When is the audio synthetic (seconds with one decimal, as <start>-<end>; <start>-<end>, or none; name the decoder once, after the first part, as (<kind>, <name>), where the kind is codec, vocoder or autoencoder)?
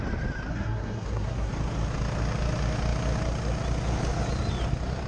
0.5-1.5 (codec, SNAC)